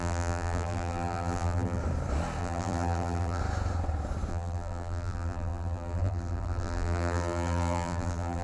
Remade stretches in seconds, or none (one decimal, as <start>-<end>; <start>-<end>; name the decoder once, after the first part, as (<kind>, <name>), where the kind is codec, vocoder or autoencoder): 0.0-1.8 (vocoder, BigVGAN v2); 2.4-3.4; 4.3-8.4